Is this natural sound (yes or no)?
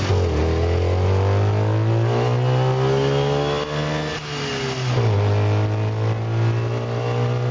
yes